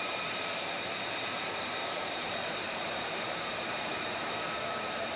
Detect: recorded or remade remade